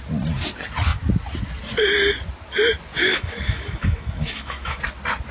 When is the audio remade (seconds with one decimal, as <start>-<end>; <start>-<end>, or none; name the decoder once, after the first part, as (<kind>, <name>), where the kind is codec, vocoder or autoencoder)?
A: 3.0-4.8 (autoencoder, DAC-VAE)